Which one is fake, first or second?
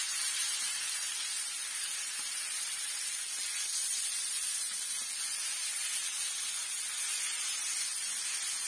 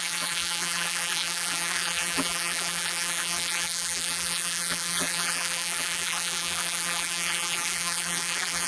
second